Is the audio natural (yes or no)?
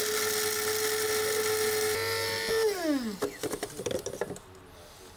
yes